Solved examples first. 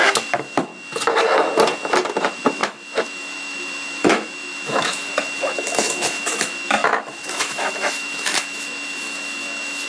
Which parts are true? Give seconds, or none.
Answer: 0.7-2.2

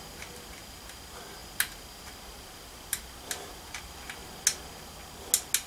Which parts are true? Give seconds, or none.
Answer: 0.0-5.7